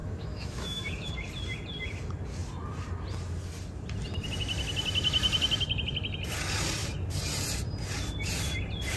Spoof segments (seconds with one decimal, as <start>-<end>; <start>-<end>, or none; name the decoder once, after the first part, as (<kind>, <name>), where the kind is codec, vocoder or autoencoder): 0.0-1.1 (autoencoder, DAC-VAE)

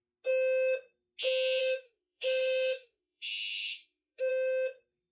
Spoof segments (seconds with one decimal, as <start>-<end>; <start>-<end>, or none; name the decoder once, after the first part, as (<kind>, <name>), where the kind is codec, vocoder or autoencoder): 1.6-4.3 (autoencoder, DAC-VAE)

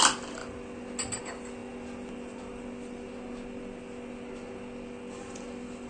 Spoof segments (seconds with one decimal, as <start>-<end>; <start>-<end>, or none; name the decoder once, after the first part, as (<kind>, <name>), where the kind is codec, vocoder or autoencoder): none

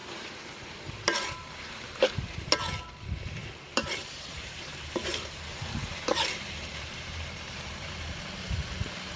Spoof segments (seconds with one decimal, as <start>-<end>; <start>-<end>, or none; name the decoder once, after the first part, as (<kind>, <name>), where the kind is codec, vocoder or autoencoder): 0.0-2.5 (vocoder, BigVGAN v2); 3.4-8.2